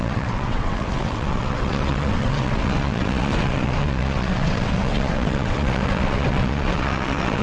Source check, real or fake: fake